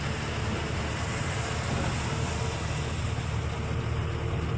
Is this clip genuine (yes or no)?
yes